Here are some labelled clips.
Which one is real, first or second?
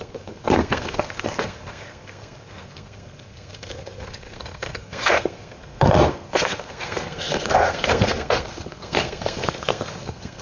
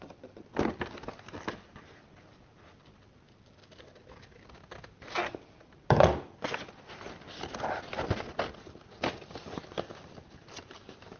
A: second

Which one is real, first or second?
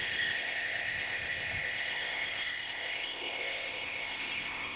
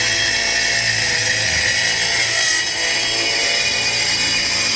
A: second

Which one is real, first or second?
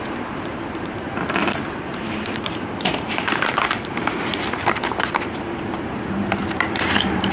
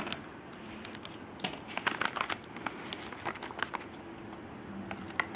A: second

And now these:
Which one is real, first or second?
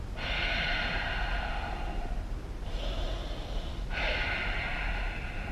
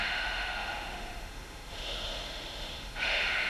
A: first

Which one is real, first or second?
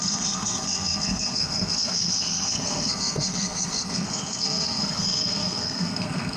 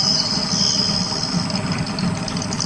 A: second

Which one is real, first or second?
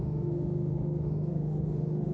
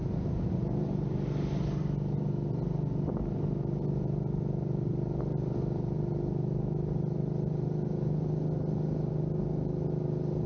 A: second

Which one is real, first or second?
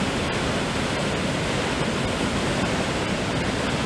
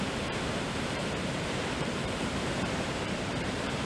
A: first